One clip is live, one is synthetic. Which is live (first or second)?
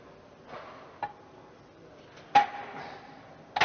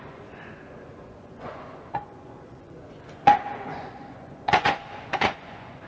first